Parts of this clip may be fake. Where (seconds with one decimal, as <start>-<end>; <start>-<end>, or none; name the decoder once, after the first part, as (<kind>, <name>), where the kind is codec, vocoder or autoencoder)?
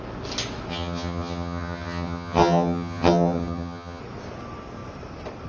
0.7-4.0 (vocoder, HiFi-GAN)